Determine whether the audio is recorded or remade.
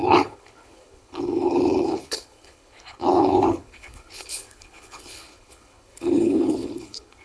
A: remade